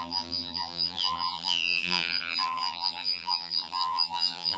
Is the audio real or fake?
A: fake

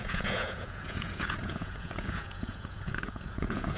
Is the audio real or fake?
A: fake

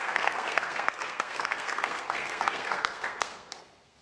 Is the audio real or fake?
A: fake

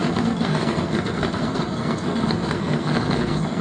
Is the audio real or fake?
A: fake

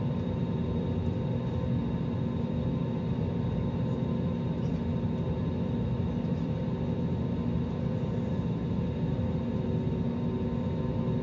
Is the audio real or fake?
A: real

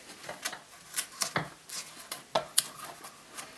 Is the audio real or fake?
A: real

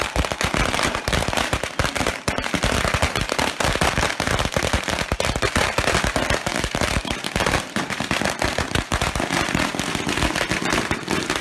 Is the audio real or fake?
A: fake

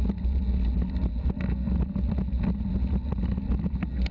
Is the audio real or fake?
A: real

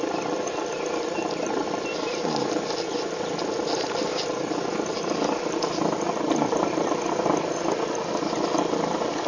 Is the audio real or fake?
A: real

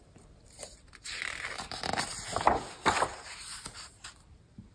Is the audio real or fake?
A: real